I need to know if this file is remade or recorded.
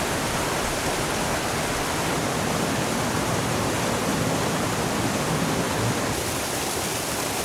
recorded